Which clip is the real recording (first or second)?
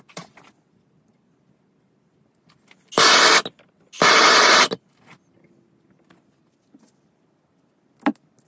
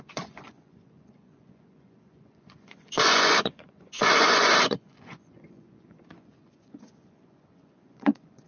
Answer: first